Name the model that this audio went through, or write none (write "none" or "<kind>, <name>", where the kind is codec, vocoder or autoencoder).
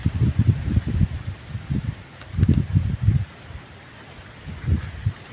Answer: none